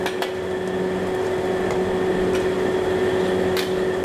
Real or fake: real